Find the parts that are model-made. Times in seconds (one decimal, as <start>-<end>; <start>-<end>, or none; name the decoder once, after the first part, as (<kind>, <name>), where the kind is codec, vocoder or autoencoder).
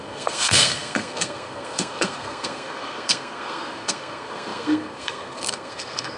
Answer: 0.0-6.2 (codec, SNAC)